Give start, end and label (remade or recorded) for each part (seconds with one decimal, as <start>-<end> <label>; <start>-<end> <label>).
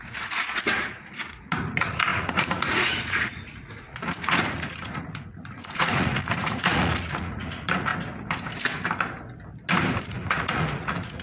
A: 0.0-7.9 remade; 7.9-10.0 recorded; 10.0-11.2 remade